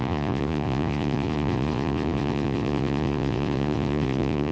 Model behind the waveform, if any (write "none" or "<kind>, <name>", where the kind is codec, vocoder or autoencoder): vocoder, Vocos